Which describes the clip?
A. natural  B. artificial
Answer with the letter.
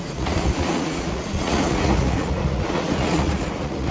B